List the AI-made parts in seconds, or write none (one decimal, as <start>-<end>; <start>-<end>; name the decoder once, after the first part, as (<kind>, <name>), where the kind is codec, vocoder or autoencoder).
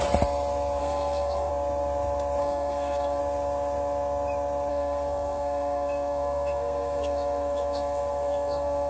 0.8-1.5 (codec, SNAC); 2.4-3.2; 4.7-8.9